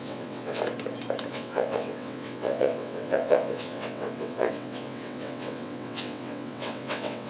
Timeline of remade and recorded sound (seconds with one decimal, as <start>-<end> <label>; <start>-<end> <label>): 0.0-0.6 remade; 0.6-1.3 recorded; 1.3-7.3 remade